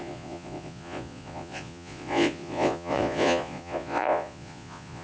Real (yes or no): no